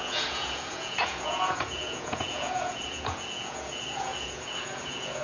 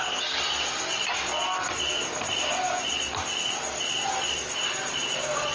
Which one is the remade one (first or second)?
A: first